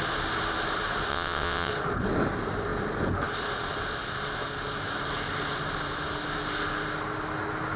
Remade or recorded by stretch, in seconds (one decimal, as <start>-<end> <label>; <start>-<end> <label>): 0.0-1.1 recorded; 1.1-1.7 remade; 1.7-7.8 recorded